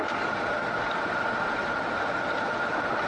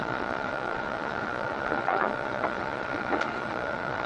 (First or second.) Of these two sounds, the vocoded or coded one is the second